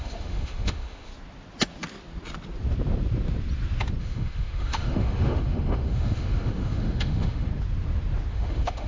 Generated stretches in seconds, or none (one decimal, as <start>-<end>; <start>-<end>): 0.0-1.1; 4.0-7.5; 8.3-8.9